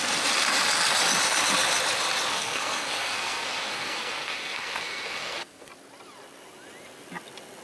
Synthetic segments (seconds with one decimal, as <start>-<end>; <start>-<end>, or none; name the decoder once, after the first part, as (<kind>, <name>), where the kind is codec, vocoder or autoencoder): 2.3-5.7 (codec, SNAC)